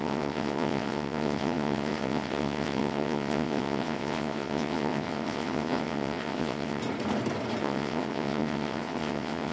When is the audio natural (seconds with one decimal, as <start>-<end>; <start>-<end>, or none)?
6.8-7.6